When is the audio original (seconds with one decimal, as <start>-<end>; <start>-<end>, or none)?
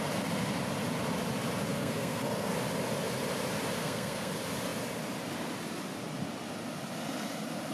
0.0-1.7; 2.5-3.8; 4.3-7.7